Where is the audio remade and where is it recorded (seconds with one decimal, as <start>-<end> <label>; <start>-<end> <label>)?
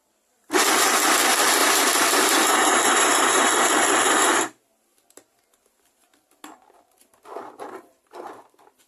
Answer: 0.0-1.6 recorded; 1.6-3.1 remade; 3.1-8.9 recorded